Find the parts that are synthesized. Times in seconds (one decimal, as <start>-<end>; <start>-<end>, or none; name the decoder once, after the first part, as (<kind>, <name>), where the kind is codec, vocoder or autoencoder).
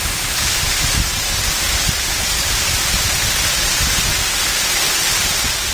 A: none